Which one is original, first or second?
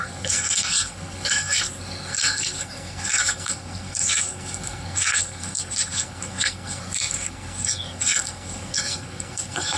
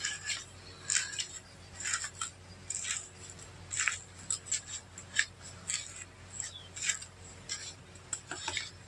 second